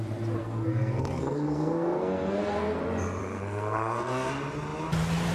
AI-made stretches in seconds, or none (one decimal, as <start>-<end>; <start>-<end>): 0.4-2.8; 3.2-4.3